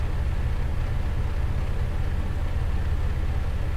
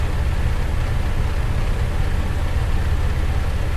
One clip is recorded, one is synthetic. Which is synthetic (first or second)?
second